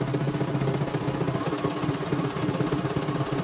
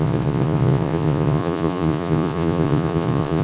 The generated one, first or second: second